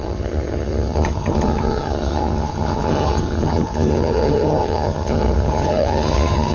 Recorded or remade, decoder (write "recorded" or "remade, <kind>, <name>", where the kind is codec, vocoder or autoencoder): remade, vocoder, HiFi-GAN